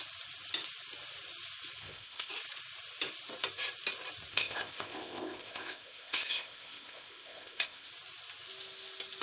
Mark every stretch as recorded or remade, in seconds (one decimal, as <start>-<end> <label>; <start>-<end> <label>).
0.0-1.8 recorded; 1.8-2.3 remade; 2.3-4.3 recorded; 4.3-7.9 remade; 7.9-9.2 recorded